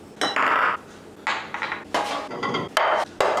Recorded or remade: recorded